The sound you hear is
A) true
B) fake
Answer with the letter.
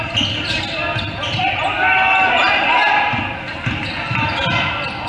A